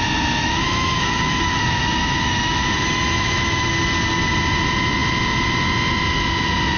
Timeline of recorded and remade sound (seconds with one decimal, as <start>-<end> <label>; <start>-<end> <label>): 0.0-0.4 recorded; 0.4-3.7 remade; 3.7-6.8 recorded